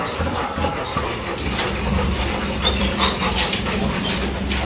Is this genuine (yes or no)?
no